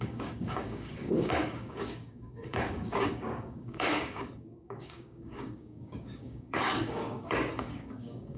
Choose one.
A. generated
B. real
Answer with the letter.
A